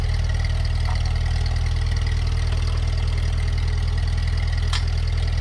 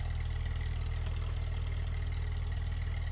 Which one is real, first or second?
first